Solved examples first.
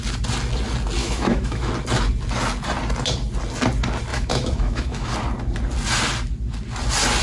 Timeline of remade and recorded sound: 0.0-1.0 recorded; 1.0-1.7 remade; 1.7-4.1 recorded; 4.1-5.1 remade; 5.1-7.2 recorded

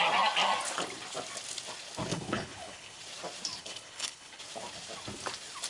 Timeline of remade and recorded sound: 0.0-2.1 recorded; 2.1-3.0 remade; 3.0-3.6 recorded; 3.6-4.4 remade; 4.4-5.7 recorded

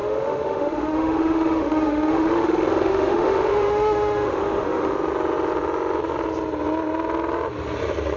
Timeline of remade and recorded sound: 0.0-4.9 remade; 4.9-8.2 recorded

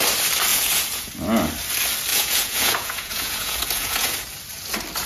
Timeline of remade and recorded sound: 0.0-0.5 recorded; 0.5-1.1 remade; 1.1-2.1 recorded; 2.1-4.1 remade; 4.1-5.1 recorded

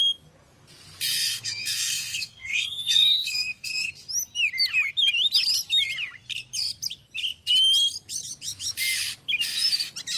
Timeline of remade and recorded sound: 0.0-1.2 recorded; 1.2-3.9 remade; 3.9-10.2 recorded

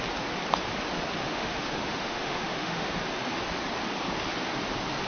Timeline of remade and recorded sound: 0.0-1.2 recorded; 1.2-2.9 remade; 2.9-5.1 recorded

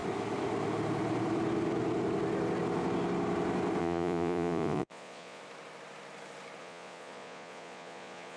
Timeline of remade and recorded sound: 0.0-3.8 recorded; 3.8-5.4 remade; 5.4-6.6 recorded; 6.6-8.4 remade